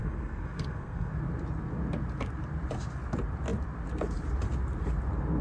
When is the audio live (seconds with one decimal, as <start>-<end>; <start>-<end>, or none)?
1.1-5.4